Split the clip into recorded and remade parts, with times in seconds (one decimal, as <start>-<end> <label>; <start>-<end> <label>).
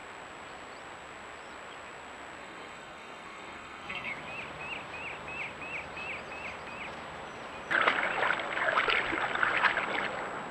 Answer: 0.0-2.4 recorded; 2.4-4.1 remade; 4.1-10.5 recorded